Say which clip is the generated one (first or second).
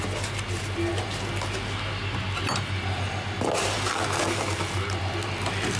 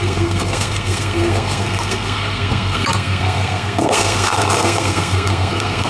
second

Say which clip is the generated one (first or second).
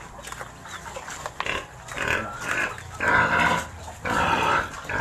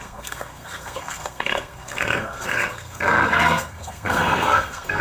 second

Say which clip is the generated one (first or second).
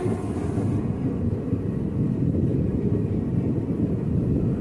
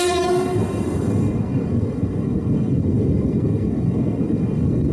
second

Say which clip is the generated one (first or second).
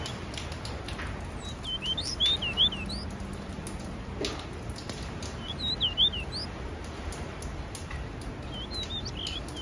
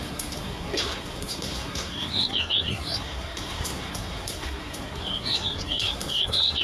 second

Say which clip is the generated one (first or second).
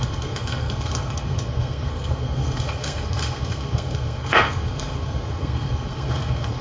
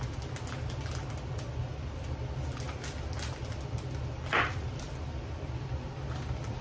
first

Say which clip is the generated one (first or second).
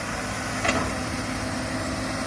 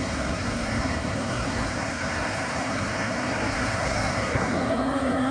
second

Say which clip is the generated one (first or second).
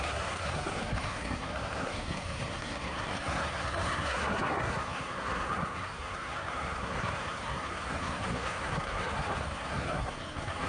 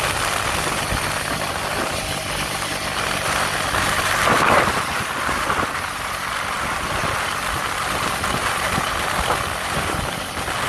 first